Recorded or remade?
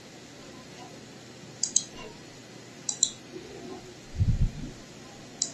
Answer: recorded